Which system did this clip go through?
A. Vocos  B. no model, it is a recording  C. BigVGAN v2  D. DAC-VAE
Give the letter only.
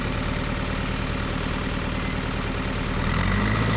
B